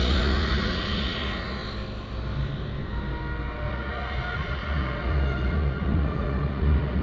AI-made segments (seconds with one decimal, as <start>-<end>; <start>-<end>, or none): 0.0-1.6; 3.7-7.0